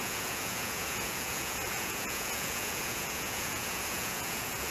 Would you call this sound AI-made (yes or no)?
yes